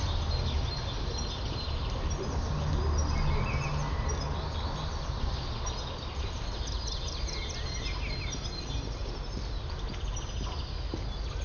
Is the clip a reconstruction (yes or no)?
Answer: no